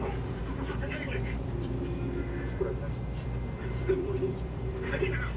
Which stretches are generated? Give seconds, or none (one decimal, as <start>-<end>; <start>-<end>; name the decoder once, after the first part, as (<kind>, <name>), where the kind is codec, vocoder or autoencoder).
0.0-5.4 (vocoder, BigVGAN v2)